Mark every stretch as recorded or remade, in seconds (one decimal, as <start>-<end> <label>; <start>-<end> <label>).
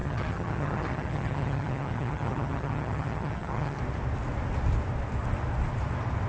0.0-3.8 remade; 3.8-6.3 recorded